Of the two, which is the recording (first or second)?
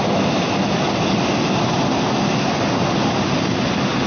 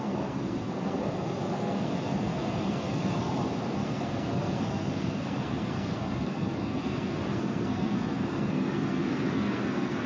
first